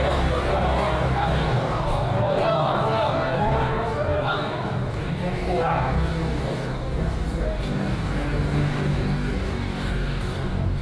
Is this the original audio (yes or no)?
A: no